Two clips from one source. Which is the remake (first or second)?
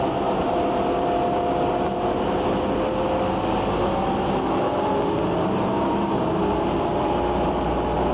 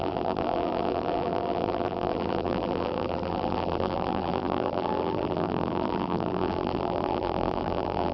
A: second